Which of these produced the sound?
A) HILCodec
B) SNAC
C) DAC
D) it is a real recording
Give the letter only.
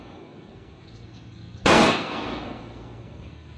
B